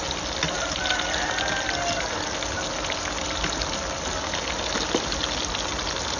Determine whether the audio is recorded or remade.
recorded